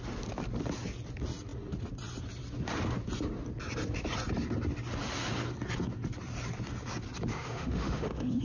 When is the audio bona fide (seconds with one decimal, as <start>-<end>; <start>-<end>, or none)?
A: 0.0-7.3

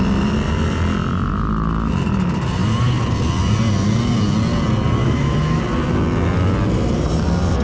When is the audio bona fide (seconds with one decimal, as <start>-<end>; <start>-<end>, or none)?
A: 0.0-5.0; 5.6-7.6

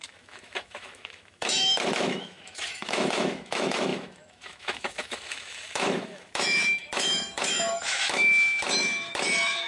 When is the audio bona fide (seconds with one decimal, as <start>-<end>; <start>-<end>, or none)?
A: none

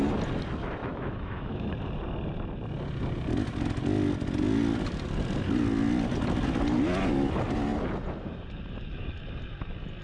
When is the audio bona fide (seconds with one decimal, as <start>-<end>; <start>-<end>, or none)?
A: 0.0-0.8; 1.7-10.0

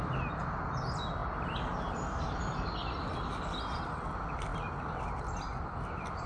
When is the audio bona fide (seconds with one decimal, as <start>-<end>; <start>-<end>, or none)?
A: 0.0-6.3